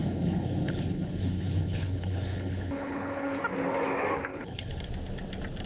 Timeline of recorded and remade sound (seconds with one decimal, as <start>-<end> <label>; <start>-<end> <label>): 0.0-3.4 remade; 3.4-4.3 recorded; 4.3-4.9 remade; 4.9-5.7 recorded